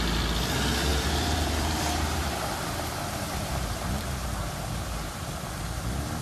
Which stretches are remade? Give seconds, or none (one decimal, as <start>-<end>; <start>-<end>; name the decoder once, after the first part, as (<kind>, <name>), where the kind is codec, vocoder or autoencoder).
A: 0.9-4.6 (vocoder, BigVGAN v2)

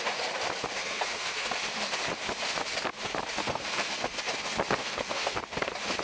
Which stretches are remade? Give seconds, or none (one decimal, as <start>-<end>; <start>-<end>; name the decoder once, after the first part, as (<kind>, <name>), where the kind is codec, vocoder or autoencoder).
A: 0.8-1.5 (codec, SNAC); 3.4-4.2; 4.8-5.4

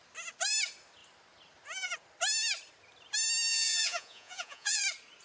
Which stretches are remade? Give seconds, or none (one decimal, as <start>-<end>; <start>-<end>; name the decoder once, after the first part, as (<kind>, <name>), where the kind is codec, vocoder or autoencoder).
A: 3.5-4.8 (vocoder, Vocos)

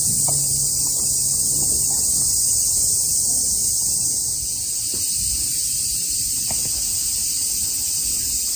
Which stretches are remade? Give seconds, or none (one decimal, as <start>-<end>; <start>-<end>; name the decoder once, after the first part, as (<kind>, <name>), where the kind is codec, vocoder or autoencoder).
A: none